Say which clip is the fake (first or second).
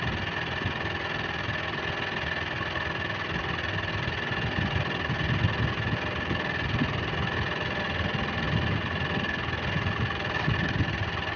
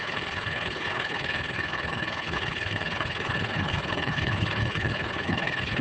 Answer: second